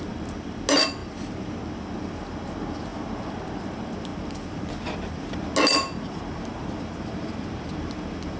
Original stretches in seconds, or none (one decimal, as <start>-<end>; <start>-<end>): 0.0-8.4